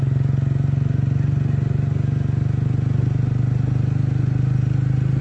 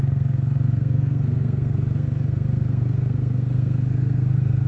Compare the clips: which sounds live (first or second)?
first